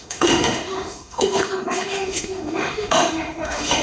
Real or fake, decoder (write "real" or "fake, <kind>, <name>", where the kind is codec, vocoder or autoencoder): fake, autoencoder, DAC-VAE